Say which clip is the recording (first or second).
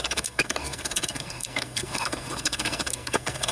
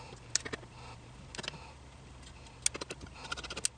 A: second